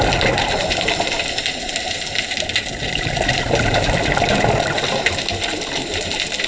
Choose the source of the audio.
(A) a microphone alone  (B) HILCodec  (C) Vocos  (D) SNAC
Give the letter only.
A